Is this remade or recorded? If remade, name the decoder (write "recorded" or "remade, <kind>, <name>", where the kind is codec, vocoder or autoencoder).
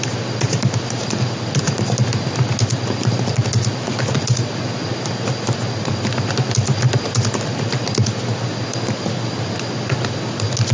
recorded